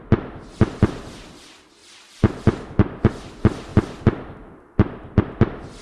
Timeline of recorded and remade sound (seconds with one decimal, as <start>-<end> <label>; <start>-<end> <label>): 0.0-5.8 recorded